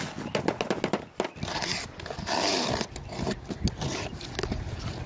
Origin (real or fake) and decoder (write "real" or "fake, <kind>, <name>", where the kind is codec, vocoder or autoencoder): real